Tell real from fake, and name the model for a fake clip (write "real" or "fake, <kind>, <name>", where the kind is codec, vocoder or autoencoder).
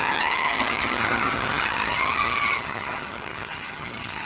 fake, vocoder, HiFi-GAN